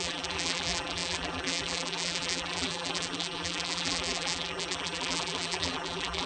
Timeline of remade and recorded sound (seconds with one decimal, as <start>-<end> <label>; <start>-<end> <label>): 0.0-6.3 remade